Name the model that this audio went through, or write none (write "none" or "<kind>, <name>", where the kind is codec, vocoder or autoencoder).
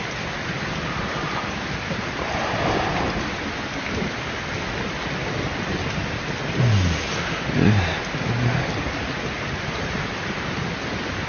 none